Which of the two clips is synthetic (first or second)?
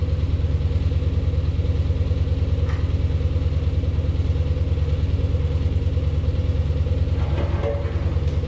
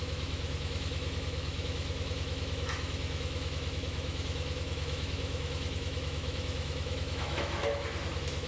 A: second